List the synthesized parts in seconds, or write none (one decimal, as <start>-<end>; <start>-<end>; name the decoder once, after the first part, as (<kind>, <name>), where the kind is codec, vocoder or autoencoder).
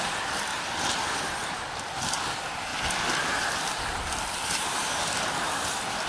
0.0-0.5 (vocoder, BigVGAN v2); 1.2-6.1